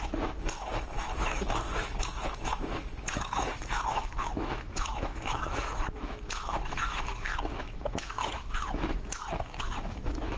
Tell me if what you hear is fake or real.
fake